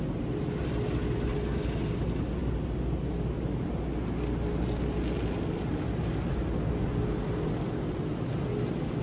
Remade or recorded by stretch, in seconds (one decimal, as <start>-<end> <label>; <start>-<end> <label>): 0.0-9.0 recorded